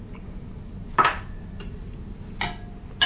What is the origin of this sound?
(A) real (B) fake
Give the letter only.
A